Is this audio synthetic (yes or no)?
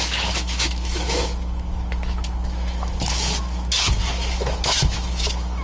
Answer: yes